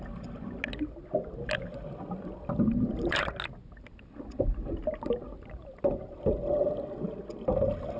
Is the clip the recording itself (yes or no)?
yes